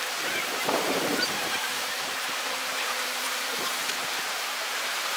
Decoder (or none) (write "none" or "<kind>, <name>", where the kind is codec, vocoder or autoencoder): vocoder, BigVGAN v2